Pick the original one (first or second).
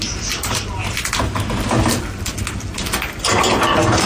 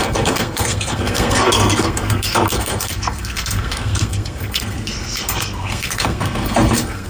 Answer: first